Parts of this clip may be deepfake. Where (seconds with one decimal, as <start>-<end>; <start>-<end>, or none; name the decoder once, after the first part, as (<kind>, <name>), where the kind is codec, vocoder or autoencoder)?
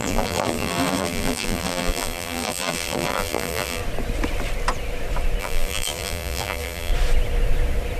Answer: 0.0-3.8 (vocoder, BigVGAN v2); 5.4-6.9